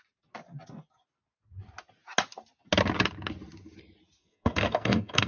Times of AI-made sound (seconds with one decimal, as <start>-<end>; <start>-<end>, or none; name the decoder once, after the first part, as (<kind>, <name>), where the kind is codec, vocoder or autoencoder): 4.2-5.3 (codec, SNAC)